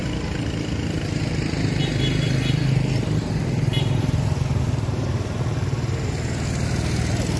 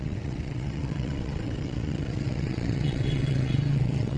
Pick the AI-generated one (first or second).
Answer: second